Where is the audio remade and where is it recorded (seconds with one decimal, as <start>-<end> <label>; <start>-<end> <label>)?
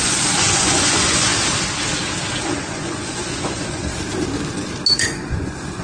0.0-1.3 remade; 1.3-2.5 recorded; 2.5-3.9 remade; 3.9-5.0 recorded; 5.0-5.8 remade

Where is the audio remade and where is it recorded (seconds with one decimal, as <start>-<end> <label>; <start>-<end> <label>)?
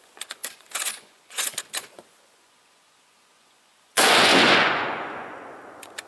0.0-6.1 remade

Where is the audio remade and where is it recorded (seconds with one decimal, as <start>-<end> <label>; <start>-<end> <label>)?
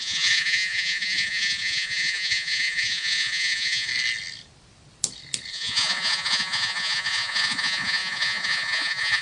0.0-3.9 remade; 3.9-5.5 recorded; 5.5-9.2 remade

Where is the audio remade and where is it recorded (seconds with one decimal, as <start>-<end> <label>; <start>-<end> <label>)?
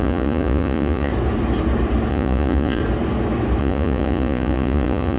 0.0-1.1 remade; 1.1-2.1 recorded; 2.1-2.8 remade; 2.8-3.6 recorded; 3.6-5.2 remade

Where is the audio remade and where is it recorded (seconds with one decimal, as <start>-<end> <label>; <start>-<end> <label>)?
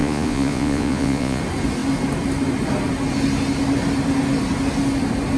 0.0-1.4 remade; 1.4-5.4 recorded